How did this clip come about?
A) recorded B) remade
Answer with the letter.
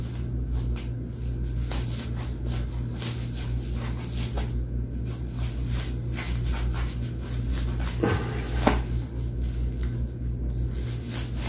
A